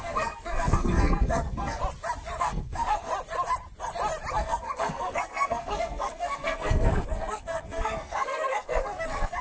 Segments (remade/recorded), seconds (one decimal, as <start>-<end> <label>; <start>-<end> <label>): 0.0-1.8 remade; 1.8-2.4 recorded; 2.4-3.1 remade; 3.1-4.3 recorded; 4.3-9.4 remade